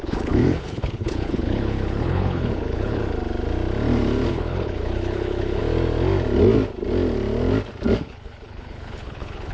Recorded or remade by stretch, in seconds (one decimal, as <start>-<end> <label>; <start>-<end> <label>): 0.0-3.0 remade; 3.0-4.3 recorded; 4.3-5.6 remade; 5.6-8.0 recorded; 8.0-9.5 remade